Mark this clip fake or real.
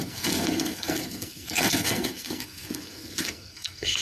fake